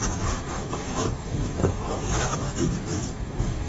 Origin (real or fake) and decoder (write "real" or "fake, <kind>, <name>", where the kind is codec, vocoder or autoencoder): fake, codec, DAC